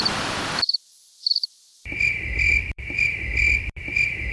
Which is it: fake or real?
fake